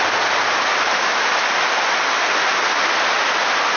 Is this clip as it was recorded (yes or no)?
yes